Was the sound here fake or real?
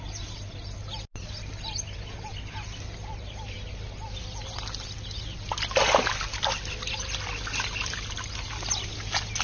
real